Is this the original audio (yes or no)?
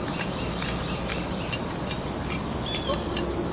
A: yes